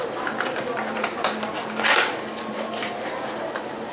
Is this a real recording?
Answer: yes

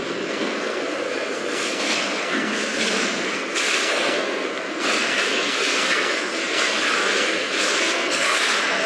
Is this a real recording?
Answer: no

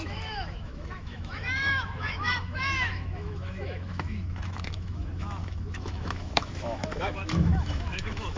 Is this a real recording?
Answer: no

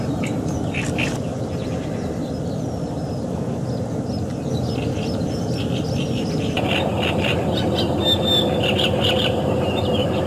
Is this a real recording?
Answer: yes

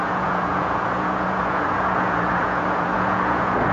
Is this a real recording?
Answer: no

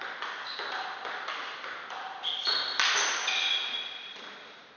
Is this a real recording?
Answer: yes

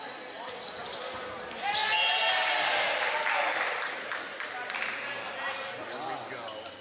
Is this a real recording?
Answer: yes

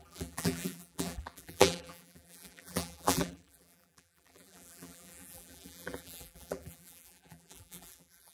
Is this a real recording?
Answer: no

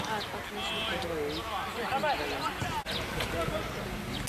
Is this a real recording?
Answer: yes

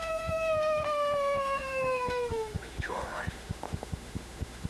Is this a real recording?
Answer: no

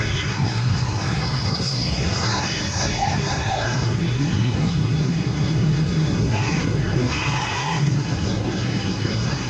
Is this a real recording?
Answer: no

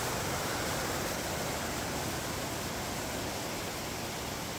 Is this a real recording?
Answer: yes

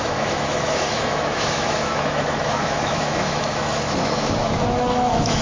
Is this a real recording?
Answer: no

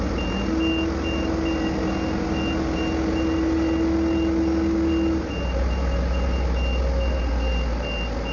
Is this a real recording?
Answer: yes